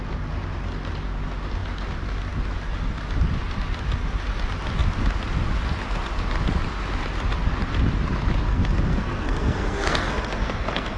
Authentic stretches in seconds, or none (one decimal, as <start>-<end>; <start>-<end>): 0.0-8.5